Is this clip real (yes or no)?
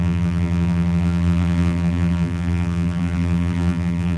no